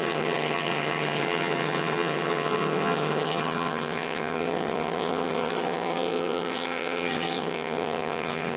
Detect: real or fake fake